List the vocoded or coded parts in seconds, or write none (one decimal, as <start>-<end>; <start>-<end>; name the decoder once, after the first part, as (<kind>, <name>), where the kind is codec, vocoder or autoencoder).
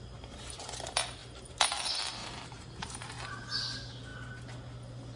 2.2-3.4 (vocoder, BigVGAN v2)